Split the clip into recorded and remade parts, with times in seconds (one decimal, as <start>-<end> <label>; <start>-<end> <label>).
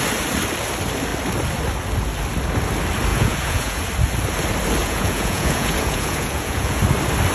0.0-3.1 recorded; 3.1-3.9 remade; 3.9-4.8 recorded; 4.8-6.8 remade; 6.8-7.3 recorded